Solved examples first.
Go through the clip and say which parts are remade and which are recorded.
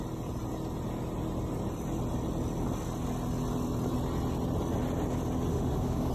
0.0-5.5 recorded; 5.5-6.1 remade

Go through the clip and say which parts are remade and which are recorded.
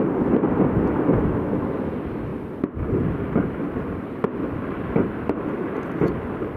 0.0-6.6 recorded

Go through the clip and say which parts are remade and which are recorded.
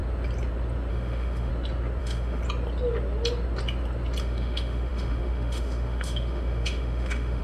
0.0-0.9 recorded; 0.9-1.5 remade; 1.5-2.0 recorded; 2.0-2.4 remade; 2.4-4.2 recorded; 4.2-7.4 remade